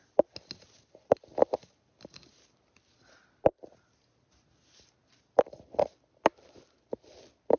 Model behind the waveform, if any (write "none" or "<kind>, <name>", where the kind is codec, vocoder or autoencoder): none